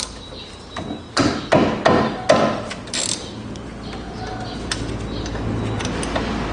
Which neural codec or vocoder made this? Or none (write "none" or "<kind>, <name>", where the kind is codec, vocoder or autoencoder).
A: none